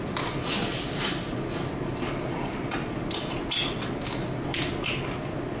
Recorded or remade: recorded